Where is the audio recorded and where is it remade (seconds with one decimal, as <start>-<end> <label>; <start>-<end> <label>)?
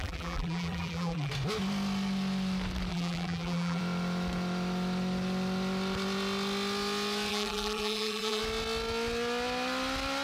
0.0-1.3 remade; 1.3-2.9 recorded; 2.9-3.8 remade; 3.8-7.3 recorded; 7.3-8.4 remade; 8.4-10.2 recorded